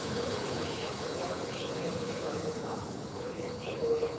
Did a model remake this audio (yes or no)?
yes